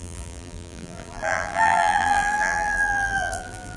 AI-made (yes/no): yes